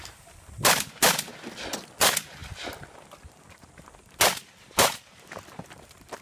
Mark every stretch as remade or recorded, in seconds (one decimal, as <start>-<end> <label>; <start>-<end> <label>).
0.0-6.2 recorded